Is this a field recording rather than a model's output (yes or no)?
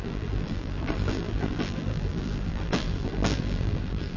no